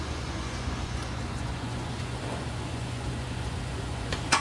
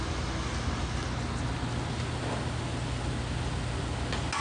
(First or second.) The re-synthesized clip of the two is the first